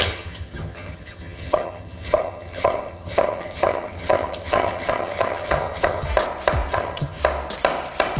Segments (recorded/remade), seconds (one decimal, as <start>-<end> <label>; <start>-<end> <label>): 0.0-6.1 remade; 6.1-6.7 recorded; 6.7-7.2 remade; 7.2-8.2 recorded